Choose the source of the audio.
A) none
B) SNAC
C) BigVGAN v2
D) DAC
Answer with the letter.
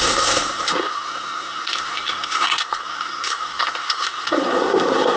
B